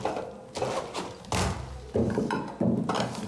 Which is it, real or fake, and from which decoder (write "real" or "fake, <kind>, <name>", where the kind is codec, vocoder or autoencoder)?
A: real